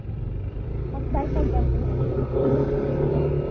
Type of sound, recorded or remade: remade